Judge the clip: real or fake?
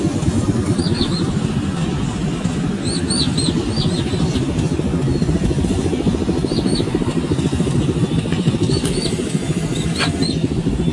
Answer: real